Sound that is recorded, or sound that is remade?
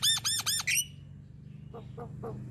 recorded